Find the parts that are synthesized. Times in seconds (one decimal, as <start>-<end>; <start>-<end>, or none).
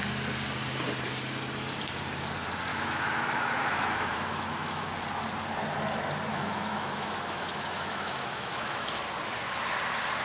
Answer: 2.7-4.9; 6.3-9.0